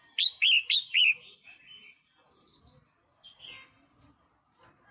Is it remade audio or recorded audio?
recorded